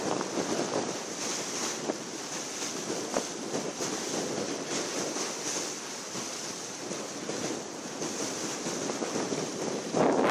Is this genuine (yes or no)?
yes